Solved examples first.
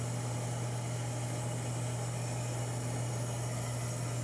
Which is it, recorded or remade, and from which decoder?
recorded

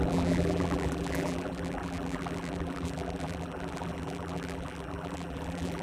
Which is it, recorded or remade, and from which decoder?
remade, vocoder, BigVGAN v2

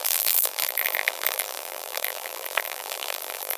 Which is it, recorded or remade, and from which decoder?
remade, vocoder, BigVGAN v2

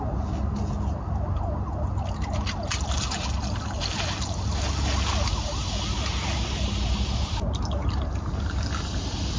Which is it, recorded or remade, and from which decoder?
recorded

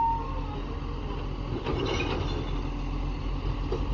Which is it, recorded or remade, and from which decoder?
recorded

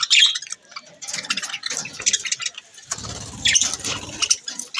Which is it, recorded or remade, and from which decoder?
recorded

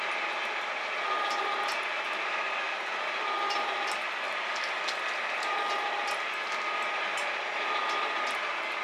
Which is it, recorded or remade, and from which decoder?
recorded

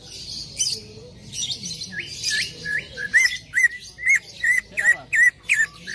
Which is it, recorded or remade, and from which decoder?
recorded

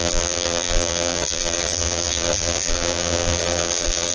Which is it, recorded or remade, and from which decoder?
remade, vocoder, BigVGAN v2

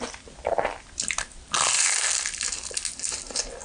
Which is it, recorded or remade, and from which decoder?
recorded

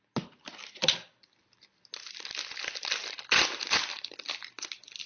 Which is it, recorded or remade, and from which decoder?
recorded